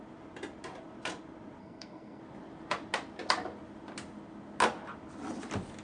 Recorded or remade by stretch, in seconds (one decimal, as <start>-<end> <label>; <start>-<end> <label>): 0.0-1.6 recorded; 1.6-2.2 remade; 2.2-5.8 recorded

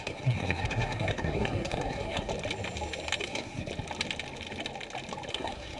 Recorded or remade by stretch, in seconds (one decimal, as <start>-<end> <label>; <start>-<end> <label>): 0.0-2.3 remade; 2.3-3.2 recorded; 3.2-3.7 remade; 3.7-5.3 recorded; 5.3-5.8 remade

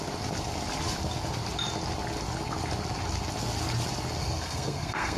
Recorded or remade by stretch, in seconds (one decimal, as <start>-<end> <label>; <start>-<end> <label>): 0.0-4.2 recorded; 4.2-5.2 remade

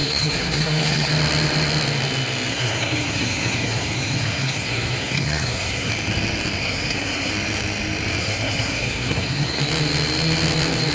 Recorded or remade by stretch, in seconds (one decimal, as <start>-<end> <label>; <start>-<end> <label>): 0.0-1.1 remade; 1.1-2.5 recorded; 2.5-5.9 remade; 5.9-6.6 recorded; 6.6-7.3 remade; 7.3-8.2 recorded; 8.2-9.6 remade; 9.6-10.9 recorded

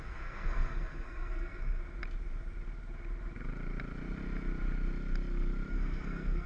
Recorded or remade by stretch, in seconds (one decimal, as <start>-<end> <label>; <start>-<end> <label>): 0.0-1.8 remade; 1.8-5.7 recorded; 5.7-6.5 remade

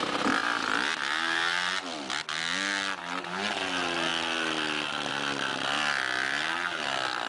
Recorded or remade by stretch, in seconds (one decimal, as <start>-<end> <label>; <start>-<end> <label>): 0.0-7.3 recorded

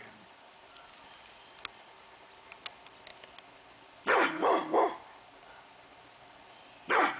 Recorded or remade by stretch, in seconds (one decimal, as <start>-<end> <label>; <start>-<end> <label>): 0.0-7.2 recorded

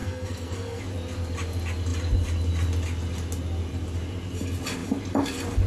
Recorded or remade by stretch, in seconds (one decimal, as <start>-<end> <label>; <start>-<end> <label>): 0.0-0.8 remade; 0.8-5.7 recorded